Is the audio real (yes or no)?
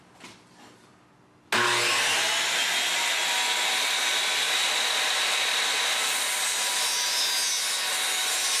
yes